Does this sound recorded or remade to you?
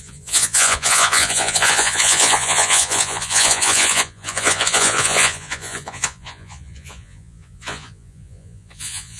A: remade